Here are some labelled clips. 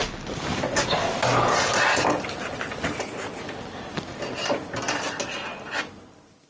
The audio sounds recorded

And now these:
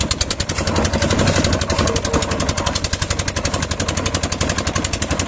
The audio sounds recorded